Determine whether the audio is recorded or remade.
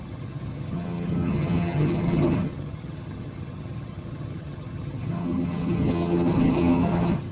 remade